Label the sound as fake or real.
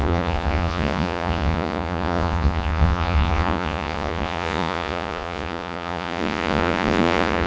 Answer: fake